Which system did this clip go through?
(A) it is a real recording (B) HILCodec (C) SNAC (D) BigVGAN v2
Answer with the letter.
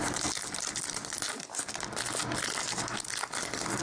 A